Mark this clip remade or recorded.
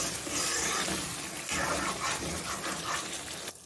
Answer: recorded